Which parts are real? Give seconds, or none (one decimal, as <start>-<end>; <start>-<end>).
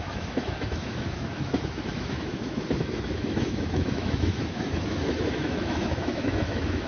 none